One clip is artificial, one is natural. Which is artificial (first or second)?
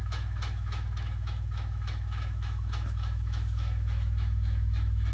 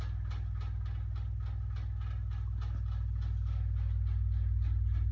first